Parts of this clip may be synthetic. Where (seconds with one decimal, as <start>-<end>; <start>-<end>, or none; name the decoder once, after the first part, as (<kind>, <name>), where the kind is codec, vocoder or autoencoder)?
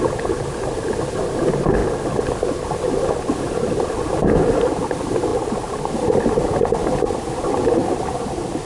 none